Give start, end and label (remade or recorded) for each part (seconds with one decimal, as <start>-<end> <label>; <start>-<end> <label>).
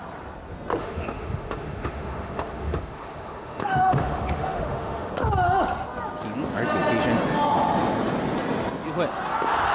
0.0-0.8 recorded; 0.8-5.1 remade; 5.1-9.7 recorded